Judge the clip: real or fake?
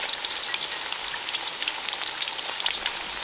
real